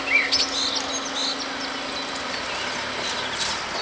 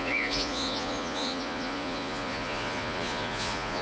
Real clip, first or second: first